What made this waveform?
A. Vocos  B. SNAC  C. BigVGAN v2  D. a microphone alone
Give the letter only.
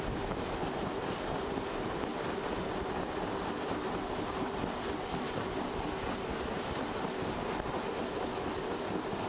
D